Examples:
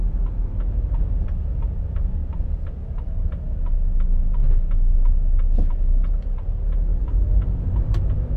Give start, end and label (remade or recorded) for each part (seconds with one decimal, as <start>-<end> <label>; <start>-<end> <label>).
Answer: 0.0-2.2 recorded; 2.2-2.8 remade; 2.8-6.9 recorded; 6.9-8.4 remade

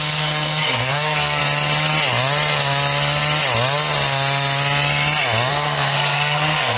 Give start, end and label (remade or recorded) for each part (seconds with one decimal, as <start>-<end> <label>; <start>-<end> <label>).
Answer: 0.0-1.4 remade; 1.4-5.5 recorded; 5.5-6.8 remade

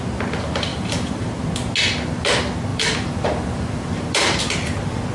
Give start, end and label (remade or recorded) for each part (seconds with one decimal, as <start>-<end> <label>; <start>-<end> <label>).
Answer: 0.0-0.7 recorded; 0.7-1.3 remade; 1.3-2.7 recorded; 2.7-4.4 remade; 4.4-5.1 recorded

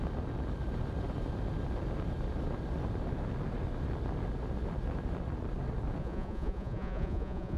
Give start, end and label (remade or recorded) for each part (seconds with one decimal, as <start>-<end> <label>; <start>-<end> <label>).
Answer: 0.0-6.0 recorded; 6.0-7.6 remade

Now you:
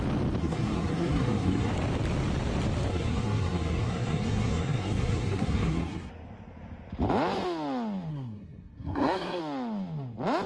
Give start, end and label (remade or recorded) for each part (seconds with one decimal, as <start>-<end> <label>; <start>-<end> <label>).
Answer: 0.0-0.4 recorded; 0.4-1.7 remade; 1.7-2.9 recorded; 2.9-6.1 remade; 6.1-8.1 recorded; 8.1-9.4 remade; 9.4-10.5 recorded

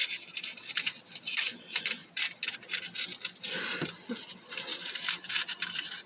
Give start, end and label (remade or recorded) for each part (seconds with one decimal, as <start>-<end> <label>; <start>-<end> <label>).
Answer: 0.0-0.7 remade; 0.7-4.7 recorded; 4.7-6.1 remade

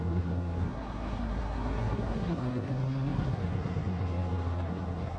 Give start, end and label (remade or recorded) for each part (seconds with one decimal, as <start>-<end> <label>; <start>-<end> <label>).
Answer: 0.0-5.2 remade